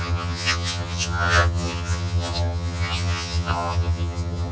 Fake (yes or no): yes